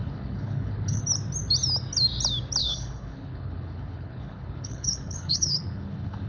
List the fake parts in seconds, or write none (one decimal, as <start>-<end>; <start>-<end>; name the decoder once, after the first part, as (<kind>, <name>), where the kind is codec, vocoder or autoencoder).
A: 0.0-1.0 (codec, HILCodec); 2.6-6.3